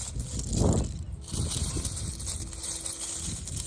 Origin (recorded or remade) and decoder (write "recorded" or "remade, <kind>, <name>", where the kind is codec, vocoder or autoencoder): recorded